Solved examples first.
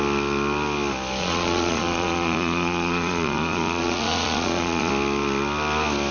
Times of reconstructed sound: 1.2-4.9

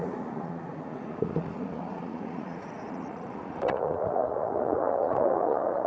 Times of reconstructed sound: 0.0-5.9